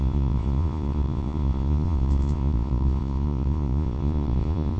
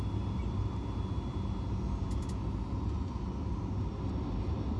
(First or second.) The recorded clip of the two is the second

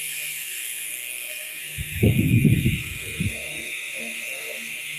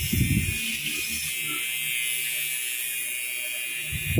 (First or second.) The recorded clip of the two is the second